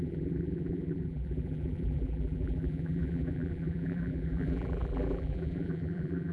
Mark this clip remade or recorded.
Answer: remade